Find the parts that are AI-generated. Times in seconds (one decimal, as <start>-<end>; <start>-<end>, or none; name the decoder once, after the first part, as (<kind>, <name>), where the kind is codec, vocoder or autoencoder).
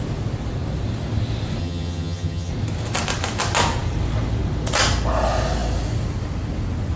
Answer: 1.6-2.5 (vocoder, HiFi-GAN)